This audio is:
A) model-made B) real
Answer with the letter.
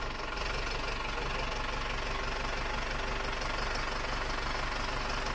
B